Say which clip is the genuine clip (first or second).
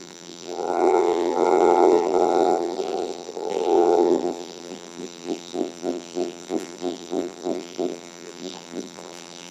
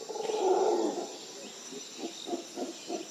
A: second